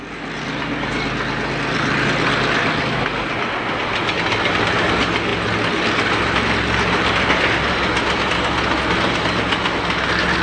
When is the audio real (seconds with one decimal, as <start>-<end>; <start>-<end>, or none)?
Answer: 0.0-10.4